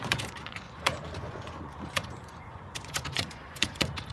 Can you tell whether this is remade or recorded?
remade